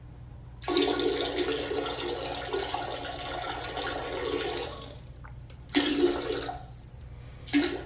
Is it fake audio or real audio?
real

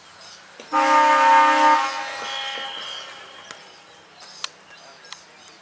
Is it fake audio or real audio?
real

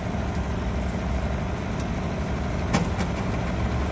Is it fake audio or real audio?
real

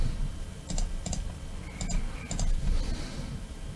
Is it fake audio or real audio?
real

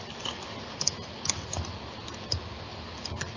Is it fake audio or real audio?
real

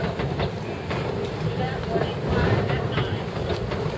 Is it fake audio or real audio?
real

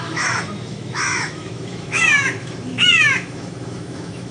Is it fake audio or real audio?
fake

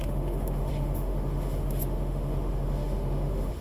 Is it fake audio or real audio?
fake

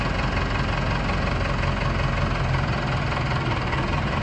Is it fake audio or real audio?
real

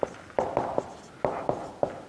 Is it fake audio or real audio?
real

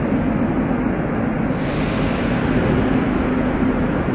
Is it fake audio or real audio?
real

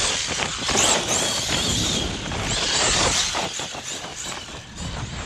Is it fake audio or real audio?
real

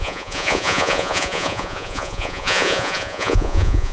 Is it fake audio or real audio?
fake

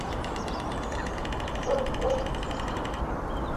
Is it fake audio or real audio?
fake